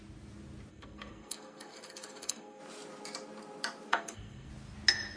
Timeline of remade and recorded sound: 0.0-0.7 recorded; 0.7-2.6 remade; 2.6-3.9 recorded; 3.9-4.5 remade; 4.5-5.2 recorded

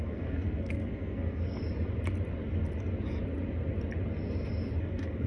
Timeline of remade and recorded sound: 0.0-1.6 remade; 1.6-4.8 recorded; 4.8-5.3 remade

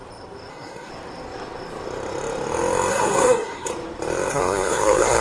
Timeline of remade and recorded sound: 0.0-0.5 recorded; 0.5-0.9 remade; 0.9-2.9 recorded; 2.9-3.7 remade; 3.7-4.3 recorded; 4.3-5.2 remade

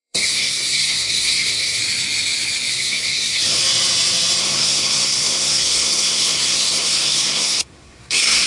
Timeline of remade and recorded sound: 0.0-1.8 remade; 1.8-2.7 recorded; 2.7-3.6 remade; 3.6-4.4 recorded; 4.4-8.5 remade